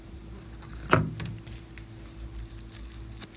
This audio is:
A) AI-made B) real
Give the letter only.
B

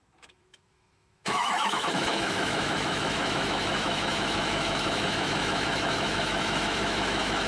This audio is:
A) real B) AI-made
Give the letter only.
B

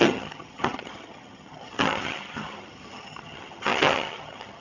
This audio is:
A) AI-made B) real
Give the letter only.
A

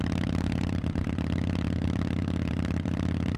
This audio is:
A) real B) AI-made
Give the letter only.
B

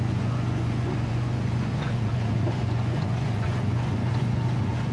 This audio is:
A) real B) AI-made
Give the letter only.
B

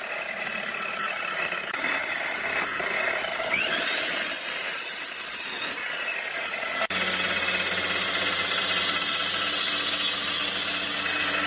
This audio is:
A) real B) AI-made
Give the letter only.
A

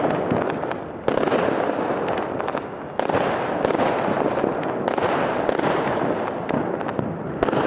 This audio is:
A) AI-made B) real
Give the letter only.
B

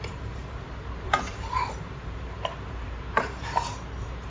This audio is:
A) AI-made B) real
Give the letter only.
A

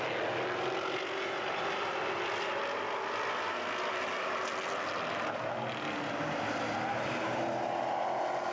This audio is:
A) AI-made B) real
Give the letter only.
B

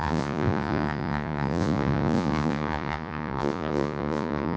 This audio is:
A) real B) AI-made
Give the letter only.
B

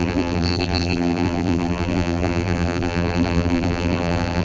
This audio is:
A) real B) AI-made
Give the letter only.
B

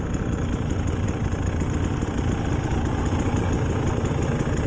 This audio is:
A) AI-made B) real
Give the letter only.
B